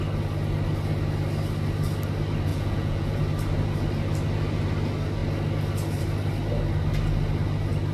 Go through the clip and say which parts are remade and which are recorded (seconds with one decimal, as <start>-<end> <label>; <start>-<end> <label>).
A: 0.0-2.5 recorded; 2.5-3.2 remade; 3.2-7.9 recorded